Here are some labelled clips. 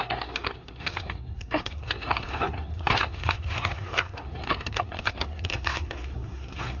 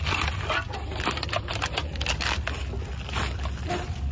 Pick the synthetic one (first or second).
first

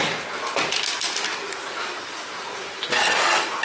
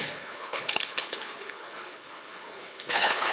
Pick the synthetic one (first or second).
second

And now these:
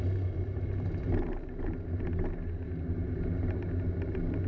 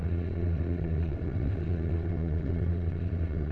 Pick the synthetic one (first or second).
second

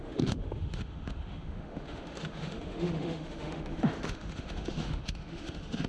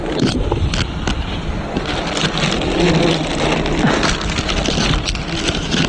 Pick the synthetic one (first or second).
first